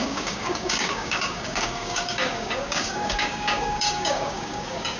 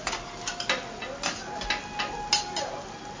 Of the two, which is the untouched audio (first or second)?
second